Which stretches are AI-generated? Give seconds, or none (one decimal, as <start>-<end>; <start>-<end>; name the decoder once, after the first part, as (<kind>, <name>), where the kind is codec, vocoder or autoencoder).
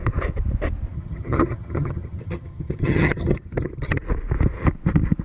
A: 0.9-4.0 (vocoder, HiFi-GAN)